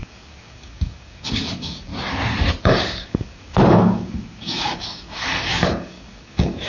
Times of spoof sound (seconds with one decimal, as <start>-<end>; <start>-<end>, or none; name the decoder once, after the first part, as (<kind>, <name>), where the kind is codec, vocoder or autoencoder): 0.0-1.9 (codec, DAC); 2.6-6.7